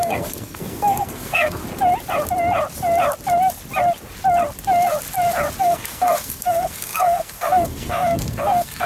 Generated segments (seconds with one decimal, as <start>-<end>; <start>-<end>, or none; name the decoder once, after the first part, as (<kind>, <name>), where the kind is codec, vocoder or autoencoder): 0.0-1.6 (codec, SNAC); 5.6-8.9